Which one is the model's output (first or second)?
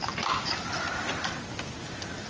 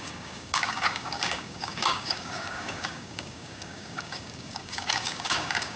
second